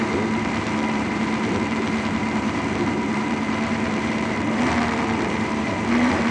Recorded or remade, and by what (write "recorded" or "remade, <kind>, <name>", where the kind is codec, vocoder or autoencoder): remade, vocoder, BigVGAN v2